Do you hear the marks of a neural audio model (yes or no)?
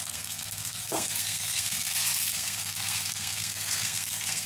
yes